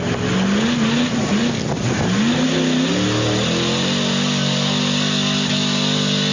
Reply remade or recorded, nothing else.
recorded